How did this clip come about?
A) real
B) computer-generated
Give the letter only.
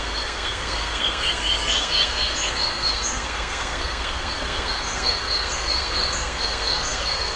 B